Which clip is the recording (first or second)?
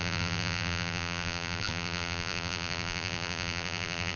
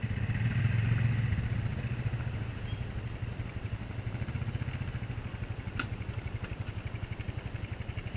second